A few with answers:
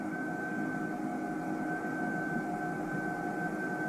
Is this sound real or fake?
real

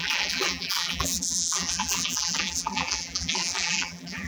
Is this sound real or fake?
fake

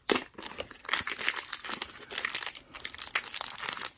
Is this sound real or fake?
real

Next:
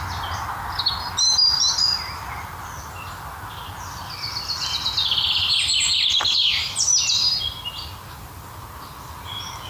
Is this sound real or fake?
real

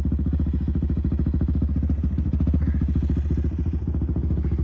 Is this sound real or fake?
real